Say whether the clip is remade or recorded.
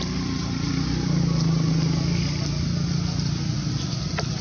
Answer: recorded